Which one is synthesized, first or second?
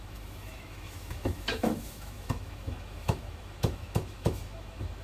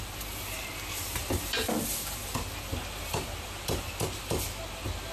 first